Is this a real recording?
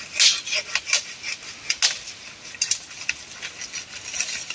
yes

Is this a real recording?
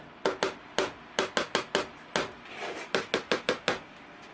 yes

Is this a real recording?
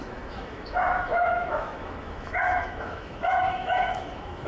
no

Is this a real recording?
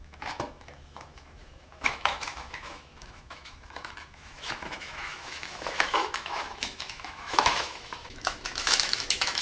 no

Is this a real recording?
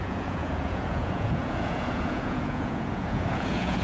no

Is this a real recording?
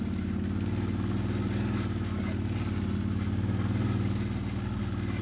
yes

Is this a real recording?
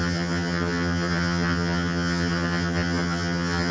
no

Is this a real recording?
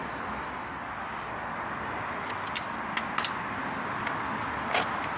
yes